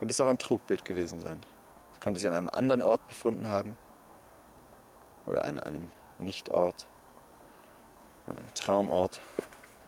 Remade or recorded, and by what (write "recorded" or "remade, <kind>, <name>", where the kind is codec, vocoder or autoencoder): remade, codec, SNAC